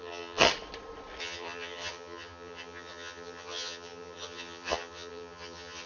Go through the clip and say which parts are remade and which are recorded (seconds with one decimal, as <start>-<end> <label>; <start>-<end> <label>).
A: 0.0-0.5 remade; 0.5-1.2 recorded; 1.2-5.9 remade